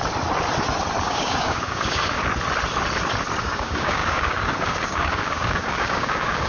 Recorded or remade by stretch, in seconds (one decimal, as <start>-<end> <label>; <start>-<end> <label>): 0.0-1.0 recorded; 1.0-2.2 remade; 2.2-3.4 recorded; 3.4-6.5 remade